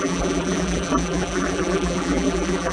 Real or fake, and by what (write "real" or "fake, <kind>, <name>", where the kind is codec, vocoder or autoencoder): fake, vocoder, BigVGAN v2